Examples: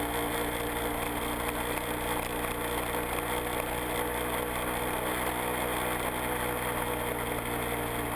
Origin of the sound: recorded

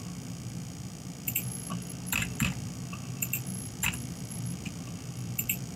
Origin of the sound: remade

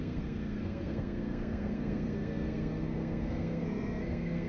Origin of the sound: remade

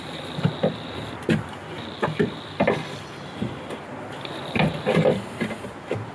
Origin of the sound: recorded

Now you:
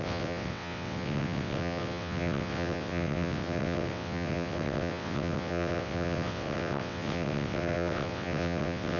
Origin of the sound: remade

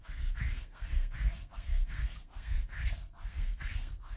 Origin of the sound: remade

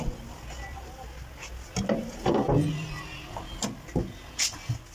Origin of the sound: recorded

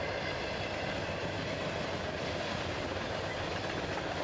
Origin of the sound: recorded